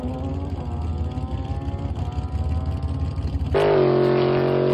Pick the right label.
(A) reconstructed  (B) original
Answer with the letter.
B